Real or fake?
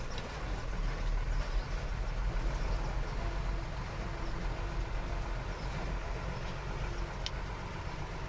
real